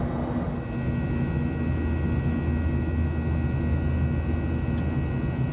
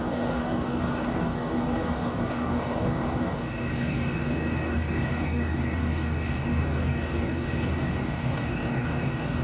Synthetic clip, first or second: second